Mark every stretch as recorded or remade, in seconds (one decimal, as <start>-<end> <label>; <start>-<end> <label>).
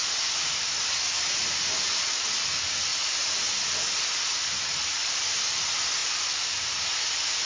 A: 0.0-7.5 recorded